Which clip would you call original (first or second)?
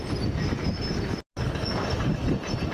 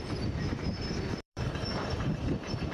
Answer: first